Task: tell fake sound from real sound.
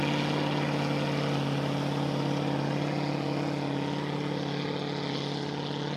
real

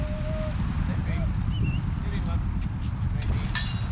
real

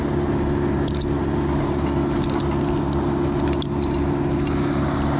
real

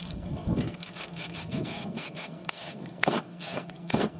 fake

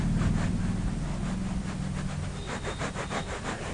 real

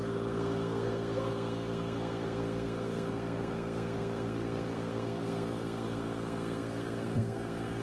fake